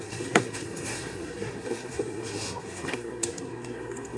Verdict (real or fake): fake